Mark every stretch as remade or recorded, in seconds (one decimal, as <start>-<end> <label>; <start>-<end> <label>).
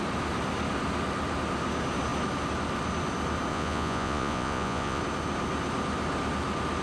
0.0-3.5 recorded; 3.5-5.0 remade; 5.0-6.8 recorded